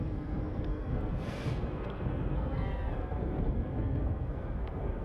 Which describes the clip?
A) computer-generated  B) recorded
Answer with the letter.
A